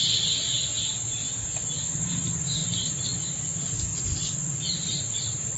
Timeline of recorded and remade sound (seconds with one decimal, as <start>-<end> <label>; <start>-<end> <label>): 0.0-2.6 remade; 2.6-3.2 recorded; 3.2-3.9 remade; 3.9-4.6 recorded; 4.6-5.6 remade